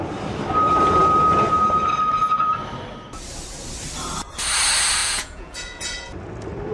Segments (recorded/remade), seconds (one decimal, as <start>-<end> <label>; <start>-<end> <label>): 0.0-5.0 recorded; 5.0-6.1 remade; 6.1-6.7 recorded